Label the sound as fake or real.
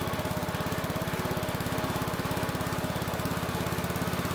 real